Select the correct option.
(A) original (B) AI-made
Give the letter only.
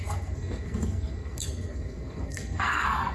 B